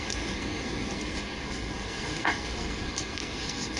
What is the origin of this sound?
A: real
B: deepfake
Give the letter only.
B